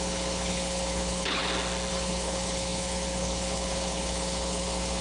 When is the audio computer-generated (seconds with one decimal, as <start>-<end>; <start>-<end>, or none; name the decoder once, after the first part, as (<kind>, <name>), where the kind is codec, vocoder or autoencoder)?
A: 0.0-1.4 (codec, HILCodec); 1.9-5.0